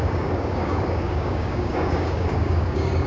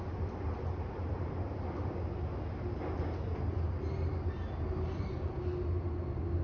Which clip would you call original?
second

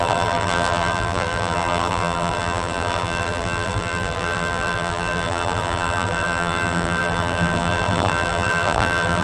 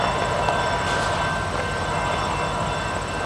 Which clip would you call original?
second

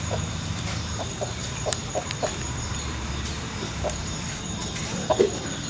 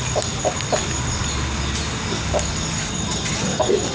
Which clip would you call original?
second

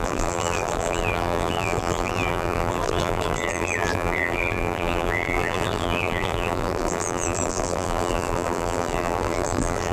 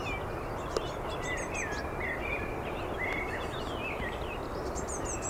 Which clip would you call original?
second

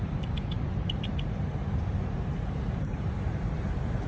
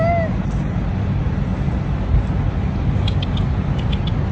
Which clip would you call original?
second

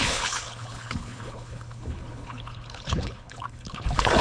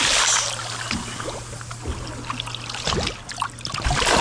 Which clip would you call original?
second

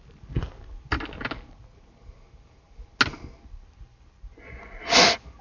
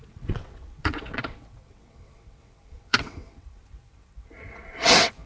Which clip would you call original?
first